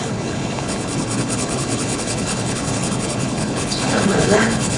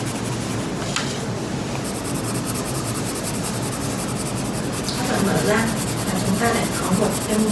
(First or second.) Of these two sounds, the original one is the second